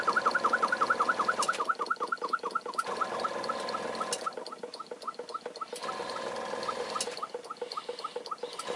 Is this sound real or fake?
real